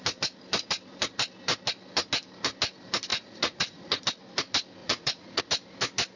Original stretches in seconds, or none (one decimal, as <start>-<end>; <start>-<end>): 0.0-3.1; 4.0-4.8; 5.4-6.2